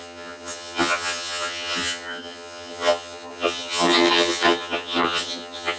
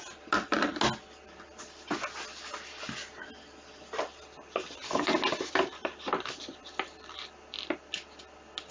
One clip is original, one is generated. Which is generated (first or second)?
first